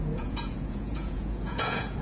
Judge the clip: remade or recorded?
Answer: remade